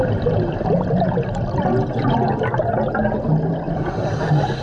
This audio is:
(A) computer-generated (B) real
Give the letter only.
B